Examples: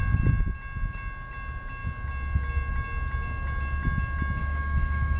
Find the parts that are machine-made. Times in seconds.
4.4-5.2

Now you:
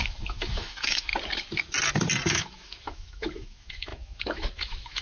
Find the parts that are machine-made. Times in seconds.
0.0-1.1; 2.3-5.0

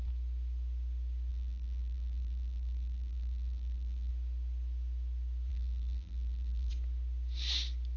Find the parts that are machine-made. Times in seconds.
1.3-4.1; 5.5-6.7